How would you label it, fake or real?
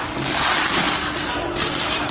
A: real